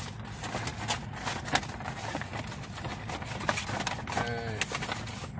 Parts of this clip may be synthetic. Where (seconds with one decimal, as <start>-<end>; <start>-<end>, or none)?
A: none